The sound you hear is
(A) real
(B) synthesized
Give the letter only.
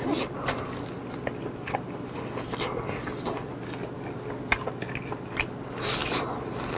A